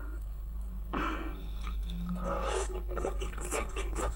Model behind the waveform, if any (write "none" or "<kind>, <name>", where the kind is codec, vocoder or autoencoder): codec, SNAC